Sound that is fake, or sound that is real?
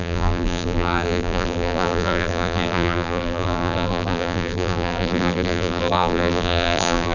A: fake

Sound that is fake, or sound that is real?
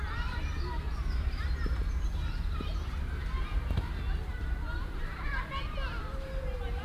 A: fake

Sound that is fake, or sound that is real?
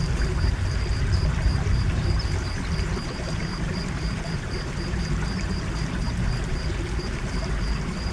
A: fake